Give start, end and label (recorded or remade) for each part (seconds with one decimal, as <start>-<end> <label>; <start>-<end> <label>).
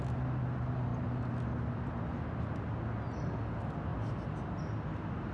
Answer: 0.0-5.3 recorded